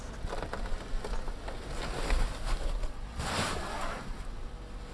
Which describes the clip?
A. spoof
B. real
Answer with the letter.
B